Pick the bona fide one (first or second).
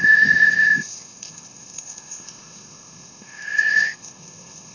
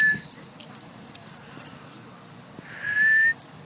second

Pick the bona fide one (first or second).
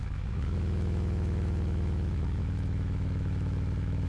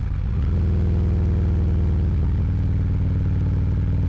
second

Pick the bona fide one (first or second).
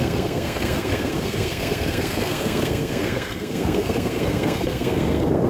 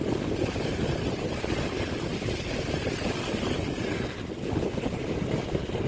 second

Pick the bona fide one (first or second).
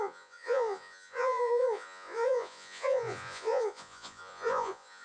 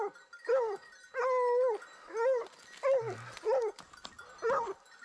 second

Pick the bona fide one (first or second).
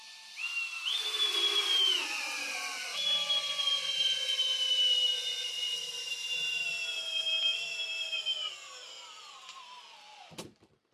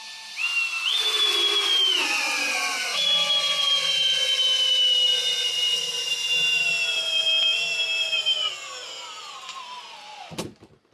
second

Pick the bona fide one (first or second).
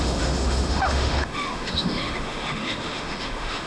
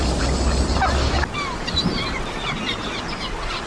second